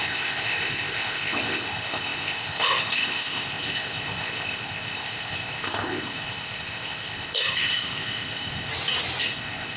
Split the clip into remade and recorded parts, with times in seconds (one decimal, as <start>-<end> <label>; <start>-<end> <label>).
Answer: 0.0-8.7 remade; 8.7-9.2 recorded; 9.2-9.8 remade